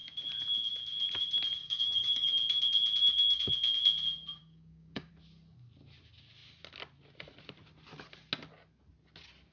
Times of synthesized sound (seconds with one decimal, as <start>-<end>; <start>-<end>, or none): 1.6-2.3; 4.4-5.1

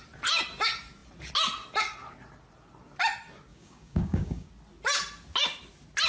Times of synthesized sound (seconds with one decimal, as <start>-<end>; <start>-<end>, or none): 3.5-4.5